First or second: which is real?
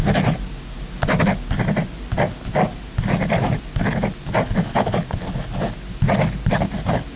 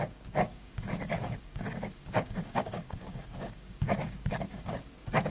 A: first